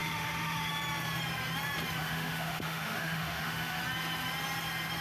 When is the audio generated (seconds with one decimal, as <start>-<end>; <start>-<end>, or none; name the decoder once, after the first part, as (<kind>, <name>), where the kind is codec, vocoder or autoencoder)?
0.0-0.7 (autoencoder, DAC-VAE); 2.0-3.8